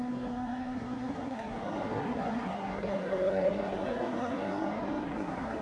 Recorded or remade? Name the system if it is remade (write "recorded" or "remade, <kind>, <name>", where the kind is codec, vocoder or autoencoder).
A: remade, codec, SNAC